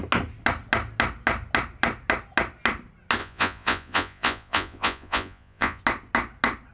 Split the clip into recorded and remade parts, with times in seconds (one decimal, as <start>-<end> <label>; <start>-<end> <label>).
0.0-3.2 recorded; 3.2-5.8 remade; 5.8-6.7 recorded